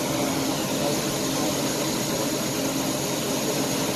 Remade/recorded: recorded